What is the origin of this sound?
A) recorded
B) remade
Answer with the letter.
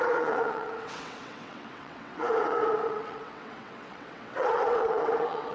B